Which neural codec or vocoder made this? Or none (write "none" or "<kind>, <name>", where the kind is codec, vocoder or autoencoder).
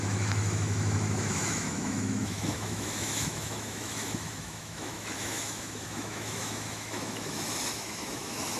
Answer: autoencoder, DAC-VAE